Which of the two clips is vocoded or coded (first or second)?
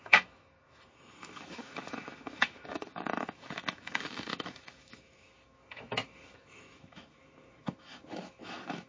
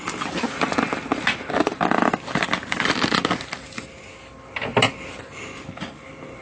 first